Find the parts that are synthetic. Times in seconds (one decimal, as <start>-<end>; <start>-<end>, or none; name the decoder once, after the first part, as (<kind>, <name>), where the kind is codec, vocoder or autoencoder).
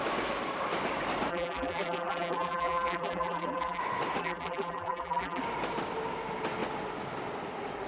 1.3-3.8 (vocoder, BigVGAN v2); 4.2-5.4